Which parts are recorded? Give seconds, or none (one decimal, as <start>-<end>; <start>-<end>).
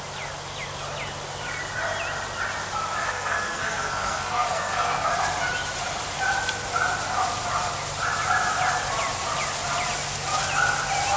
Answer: 0.0-3.0; 5.1-11.2